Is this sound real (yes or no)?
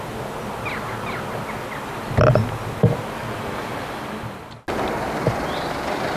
yes